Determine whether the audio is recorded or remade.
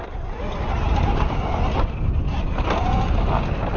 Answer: recorded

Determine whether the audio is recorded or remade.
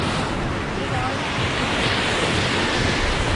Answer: recorded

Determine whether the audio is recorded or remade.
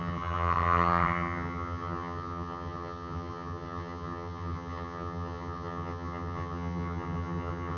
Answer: remade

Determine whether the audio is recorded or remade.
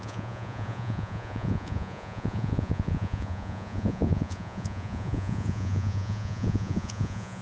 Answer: remade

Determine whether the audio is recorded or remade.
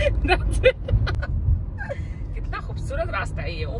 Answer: recorded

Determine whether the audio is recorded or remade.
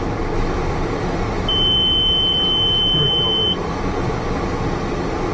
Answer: recorded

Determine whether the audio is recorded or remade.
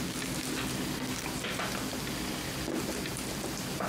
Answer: recorded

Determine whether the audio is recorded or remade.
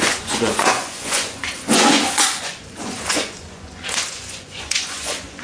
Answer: remade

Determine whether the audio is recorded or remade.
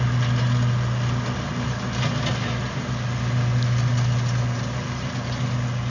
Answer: recorded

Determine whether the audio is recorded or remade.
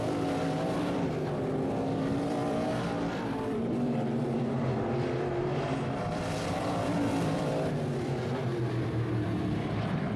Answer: remade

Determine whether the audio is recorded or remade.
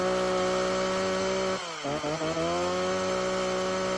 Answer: recorded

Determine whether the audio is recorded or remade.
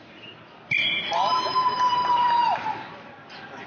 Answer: remade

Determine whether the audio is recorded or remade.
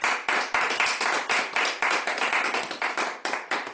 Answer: recorded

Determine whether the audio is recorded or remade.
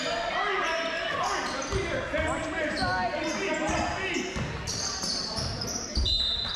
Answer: recorded